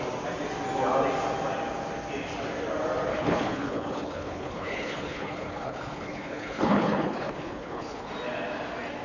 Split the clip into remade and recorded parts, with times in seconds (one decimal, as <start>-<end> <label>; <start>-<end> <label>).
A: 0.0-3.1 recorded; 3.1-8.1 remade; 8.1-9.0 recorded